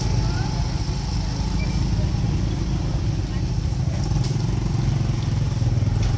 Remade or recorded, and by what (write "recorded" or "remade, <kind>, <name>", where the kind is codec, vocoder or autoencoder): recorded